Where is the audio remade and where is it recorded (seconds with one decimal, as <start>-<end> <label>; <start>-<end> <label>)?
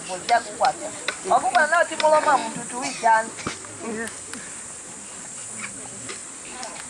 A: 0.0-0.8 recorded; 0.8-1.3 remade; 1.3-6.9 recorded